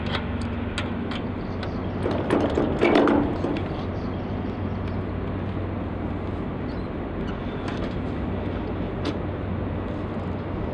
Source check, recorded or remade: recorded